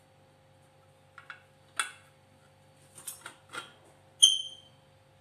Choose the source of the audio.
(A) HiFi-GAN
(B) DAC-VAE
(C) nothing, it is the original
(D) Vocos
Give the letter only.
C